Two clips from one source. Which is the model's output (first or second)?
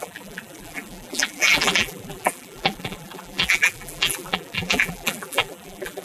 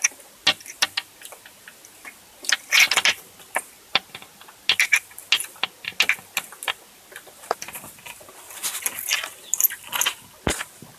first